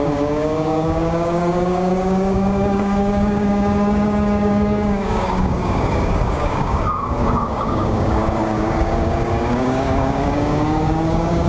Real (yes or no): no